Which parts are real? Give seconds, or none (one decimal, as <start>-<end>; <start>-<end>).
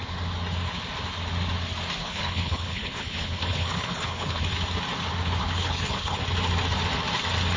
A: 0.0-2.0; 4.4-5.4; 6.2-7.6